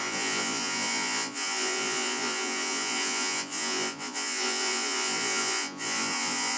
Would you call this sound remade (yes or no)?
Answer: yes